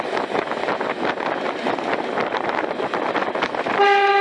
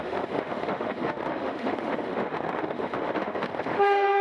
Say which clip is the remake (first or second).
second